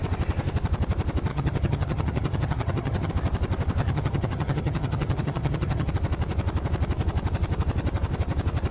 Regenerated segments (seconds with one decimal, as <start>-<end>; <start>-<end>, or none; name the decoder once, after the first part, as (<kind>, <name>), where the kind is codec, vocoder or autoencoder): 1.3-3.1 (vocoder, HiFi-GAN); 3.8-5.9